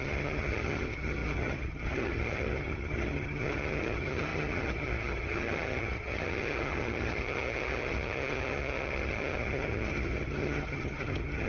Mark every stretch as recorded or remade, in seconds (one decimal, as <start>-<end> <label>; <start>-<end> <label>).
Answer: 0.0-11.5 remade

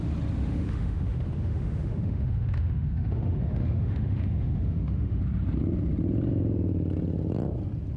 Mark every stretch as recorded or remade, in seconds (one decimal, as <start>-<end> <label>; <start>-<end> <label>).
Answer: 0.0-0.4 recorded; 0.4-5.2 remade; 5.2-8.0 recorded

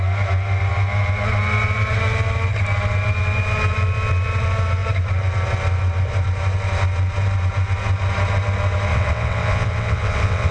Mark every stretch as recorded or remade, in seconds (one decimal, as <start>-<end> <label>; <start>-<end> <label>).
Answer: 0.0-8.9 recorded; 8.9-10.5 remade

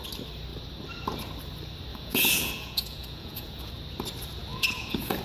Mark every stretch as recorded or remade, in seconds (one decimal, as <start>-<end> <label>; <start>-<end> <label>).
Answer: 0.0-1.9 recorded; 1.9-3.7 remade; 3.7-4.5 recorded; 4.5-5.2 remade

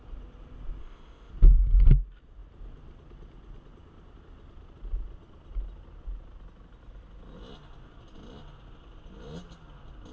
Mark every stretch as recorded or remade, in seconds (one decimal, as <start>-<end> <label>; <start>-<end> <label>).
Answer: 0.0-0.8 recorded; 0.8-1.3 remade; 1.3-10.1 recorded